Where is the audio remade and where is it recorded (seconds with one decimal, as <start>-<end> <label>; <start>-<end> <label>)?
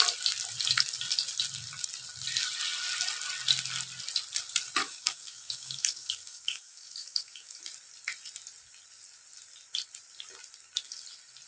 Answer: 0.0-4.8 recorded; 4.8-7.6 remade; 7.6-11.5 recorded